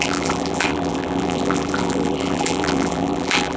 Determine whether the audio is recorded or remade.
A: remade